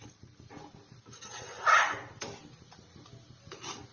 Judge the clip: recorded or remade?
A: recorded